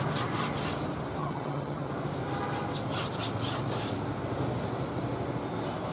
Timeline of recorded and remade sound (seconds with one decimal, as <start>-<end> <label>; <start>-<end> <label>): 0.0-1.2 recorded; 1.2-1.9 remade; 1.9-5.9 recorded